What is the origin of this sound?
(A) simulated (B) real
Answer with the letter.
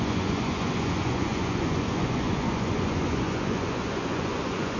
A